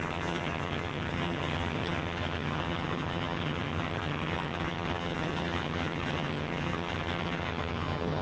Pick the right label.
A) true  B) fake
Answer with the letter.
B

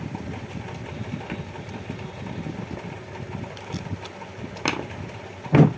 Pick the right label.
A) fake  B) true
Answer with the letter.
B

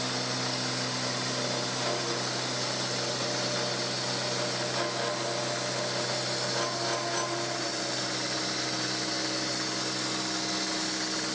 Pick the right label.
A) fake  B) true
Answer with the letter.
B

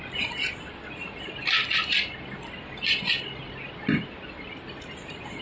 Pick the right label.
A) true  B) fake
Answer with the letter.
A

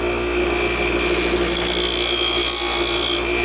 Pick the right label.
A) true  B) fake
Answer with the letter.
A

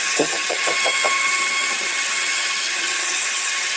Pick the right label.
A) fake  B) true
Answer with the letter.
A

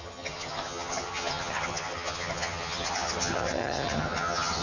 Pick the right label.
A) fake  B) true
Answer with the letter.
A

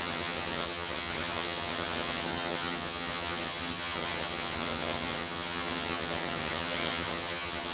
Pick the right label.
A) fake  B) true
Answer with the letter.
A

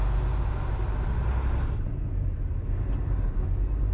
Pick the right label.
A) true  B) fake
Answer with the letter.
A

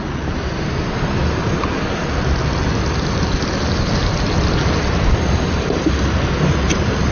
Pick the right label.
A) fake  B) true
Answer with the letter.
B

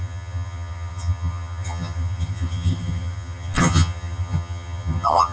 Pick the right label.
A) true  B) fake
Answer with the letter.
B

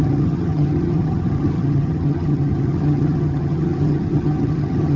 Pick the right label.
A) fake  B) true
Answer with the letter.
A